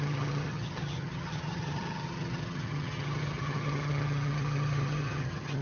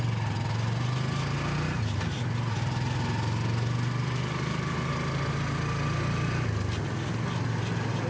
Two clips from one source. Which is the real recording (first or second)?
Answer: second